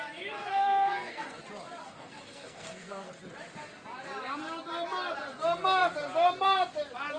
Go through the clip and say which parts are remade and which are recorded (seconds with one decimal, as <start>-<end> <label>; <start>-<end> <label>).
0.0-0.4 recorded; 0.4-1.4 remade; 1.4-1.8 recorded; 1.8-3.1 remade; 3.1-7.2 recorded